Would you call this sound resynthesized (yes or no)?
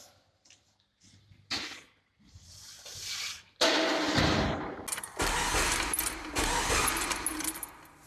no